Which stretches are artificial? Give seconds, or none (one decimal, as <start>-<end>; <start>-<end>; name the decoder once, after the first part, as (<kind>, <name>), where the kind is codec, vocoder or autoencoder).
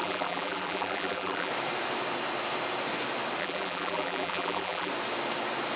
0.0-1.5 (vocoder, BigVGAN v2); 3.4-4.9